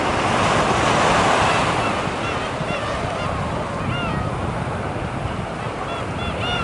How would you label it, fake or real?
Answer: real